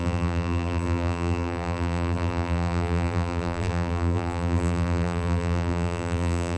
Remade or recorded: remade